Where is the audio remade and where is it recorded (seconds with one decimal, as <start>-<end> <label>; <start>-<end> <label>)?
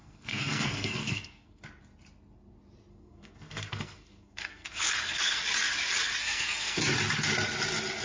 0.0-1.6 remade; 1.6-2.9 recorded; 2.9-5.4 remade; 5.4-6.2 recorded; 6.2-6.8 remade; 6.8-8.0 recorded